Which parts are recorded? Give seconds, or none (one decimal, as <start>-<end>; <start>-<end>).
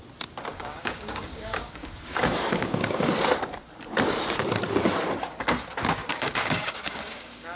0.0-0.5; 3.0-6.1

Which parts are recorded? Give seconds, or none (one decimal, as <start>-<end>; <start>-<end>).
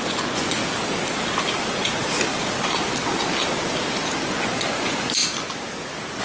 0.6-4.3; 5.2-6.2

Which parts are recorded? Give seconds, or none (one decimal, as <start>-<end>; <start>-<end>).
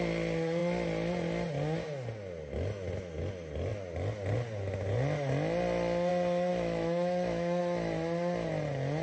0.0-6.5; 7.6-9.0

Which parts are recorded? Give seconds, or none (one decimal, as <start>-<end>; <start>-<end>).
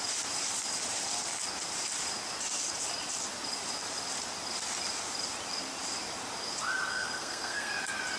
0.0-6.9; 7.7-8.2